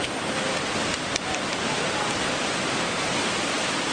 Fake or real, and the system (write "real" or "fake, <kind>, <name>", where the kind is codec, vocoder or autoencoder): fake, vocoder, BigVGAN v2